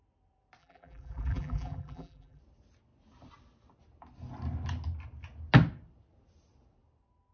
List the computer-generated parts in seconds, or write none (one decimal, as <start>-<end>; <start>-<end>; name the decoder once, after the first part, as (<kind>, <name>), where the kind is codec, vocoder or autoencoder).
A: 0.6-2.4 (vocoder, BigVGAN v2)